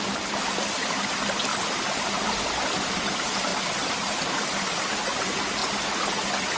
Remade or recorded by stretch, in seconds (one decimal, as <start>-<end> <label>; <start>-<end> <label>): 0.0-6.6 recorded